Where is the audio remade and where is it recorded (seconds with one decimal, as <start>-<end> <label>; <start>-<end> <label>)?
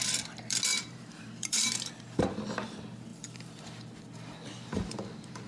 0.0-0.7 recorded; 0.7-1.9 remade; 1.9-3.1 recorded; 3.1-5.5 remade